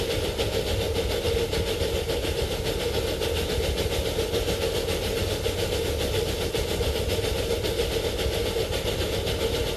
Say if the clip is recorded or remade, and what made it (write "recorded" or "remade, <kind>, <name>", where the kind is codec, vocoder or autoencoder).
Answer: recorded